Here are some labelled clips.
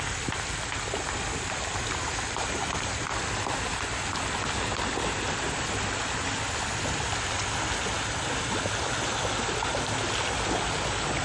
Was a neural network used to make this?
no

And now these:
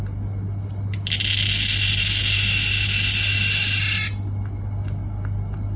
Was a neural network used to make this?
no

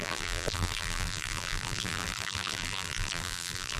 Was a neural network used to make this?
yes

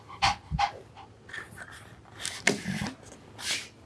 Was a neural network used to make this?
no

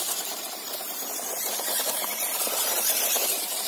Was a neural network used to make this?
yes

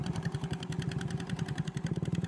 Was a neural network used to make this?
yes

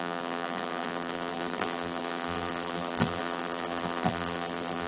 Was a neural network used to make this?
yes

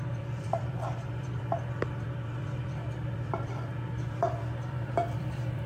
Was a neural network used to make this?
yes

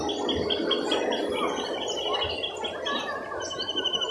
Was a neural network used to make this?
no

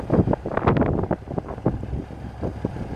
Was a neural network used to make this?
no